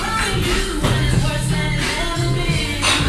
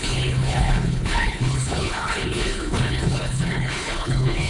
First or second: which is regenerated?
second